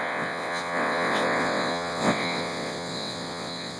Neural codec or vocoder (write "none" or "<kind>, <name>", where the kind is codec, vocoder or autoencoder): vocoder, WaveNeXt